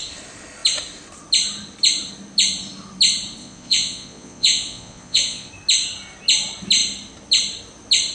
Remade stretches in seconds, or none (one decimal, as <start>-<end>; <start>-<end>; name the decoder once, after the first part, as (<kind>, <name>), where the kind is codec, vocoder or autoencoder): 3.4-5.5 (vocoder, Vocos)